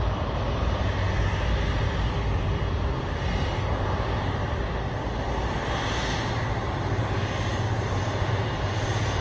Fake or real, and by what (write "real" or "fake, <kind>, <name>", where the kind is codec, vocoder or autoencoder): real